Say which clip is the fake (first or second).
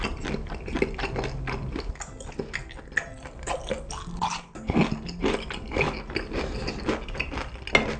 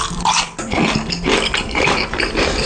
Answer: second